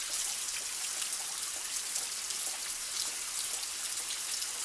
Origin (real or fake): real